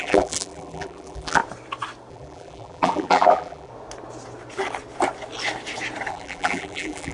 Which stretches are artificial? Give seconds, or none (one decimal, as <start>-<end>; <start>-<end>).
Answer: 0.0-1.4; 2.1-3.7; 6.1-7.1